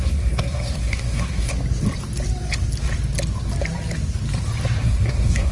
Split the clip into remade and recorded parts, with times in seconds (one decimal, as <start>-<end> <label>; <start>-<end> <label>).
0.0-1.5 remade; 1.5-4.8 recorded; 4.8-5.5 remade